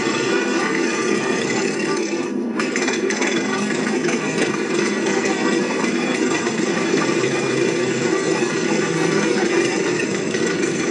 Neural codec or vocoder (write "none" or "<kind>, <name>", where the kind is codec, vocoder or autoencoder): codec, SNAC